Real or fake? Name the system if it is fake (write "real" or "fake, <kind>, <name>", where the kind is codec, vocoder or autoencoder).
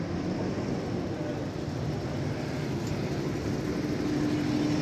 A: real